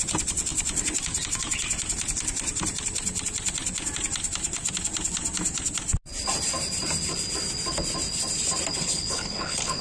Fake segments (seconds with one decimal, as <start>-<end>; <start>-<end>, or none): 8.8-9.8